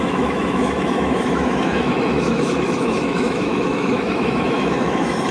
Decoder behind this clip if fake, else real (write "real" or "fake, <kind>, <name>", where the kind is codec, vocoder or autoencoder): fake, autoencoder, DAC-VAE